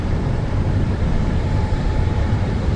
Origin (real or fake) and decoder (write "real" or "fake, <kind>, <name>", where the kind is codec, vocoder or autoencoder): fake, vocoder, BigVGAN v2